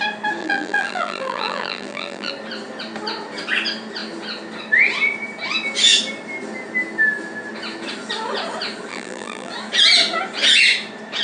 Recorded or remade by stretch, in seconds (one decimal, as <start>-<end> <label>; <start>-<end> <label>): 0.0-0.4 recorded; 0.4-2.3 remade; 2.3-8.9 recorded; 8.9-9.5 remade; 9.5-11.2 recorded